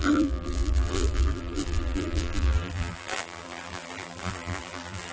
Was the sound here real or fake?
fake